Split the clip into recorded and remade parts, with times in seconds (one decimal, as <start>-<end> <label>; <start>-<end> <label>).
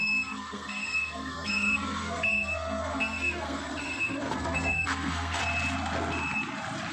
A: 0.0-5.4 remade; 5.4-6.9 recorded